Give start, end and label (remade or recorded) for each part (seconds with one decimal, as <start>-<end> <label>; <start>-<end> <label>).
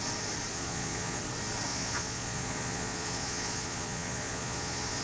0.0-0.5 recorded; 0.5-1.2 remade; 1.2-1.7 recorded; 1.7-5.0 remade